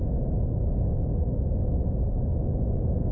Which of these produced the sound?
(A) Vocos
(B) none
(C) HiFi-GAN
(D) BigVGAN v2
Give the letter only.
B